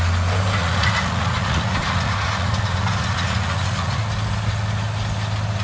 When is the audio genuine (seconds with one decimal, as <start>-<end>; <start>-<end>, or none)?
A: 0.0-0.6; 4.0-5.6